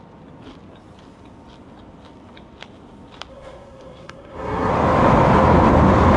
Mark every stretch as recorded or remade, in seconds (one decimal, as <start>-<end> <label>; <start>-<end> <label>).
0.0-3.3 recorded; 3.3-4.7 remade; 4.7-6.2 recorded